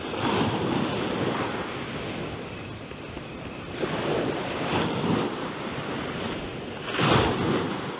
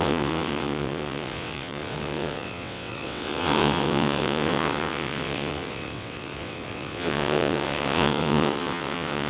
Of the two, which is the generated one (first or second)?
second